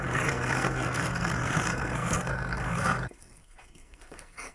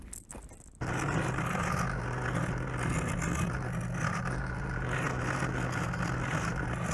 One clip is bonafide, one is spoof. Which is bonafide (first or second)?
second